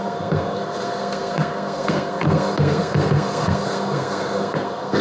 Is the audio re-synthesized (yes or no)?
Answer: yes